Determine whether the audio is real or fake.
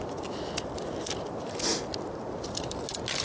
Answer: real